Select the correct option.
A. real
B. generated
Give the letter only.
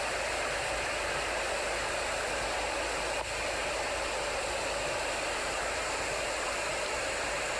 A